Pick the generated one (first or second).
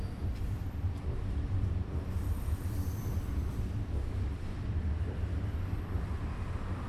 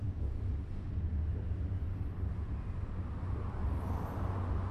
first